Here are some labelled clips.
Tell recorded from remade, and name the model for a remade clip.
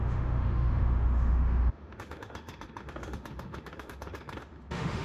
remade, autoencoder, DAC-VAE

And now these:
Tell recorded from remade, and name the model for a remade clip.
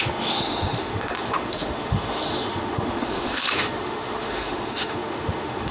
remade, autoencoder, DAC-VAE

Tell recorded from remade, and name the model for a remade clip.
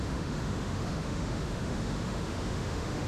remade, autoencoder, DAC-VAE